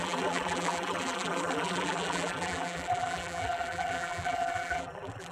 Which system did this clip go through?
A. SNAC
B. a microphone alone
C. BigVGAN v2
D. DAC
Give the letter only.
C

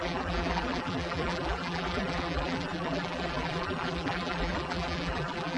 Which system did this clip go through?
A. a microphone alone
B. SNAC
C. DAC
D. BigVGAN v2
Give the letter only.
D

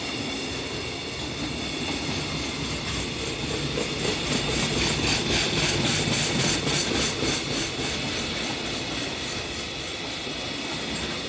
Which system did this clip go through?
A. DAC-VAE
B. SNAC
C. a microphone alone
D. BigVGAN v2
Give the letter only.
C